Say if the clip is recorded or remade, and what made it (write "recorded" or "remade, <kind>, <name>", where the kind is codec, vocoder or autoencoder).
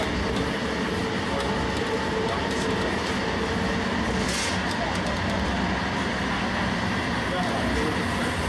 recorded